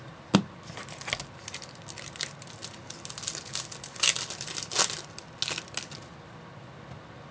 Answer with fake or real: real